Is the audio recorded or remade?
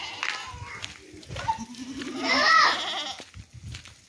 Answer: recorded